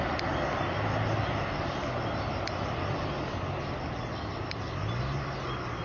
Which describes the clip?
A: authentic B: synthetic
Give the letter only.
A